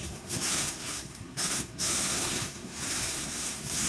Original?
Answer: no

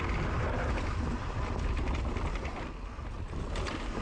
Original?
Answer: yes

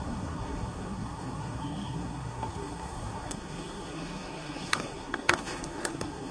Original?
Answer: no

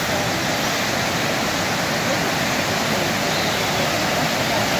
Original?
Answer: yes